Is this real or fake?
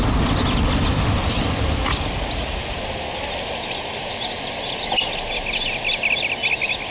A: real